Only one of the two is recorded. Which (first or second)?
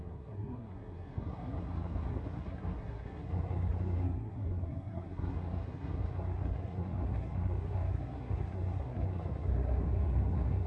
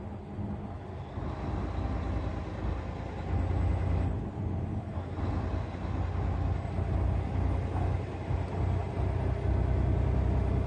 second